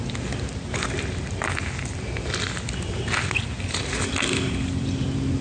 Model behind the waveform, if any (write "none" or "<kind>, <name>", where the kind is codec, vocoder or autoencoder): none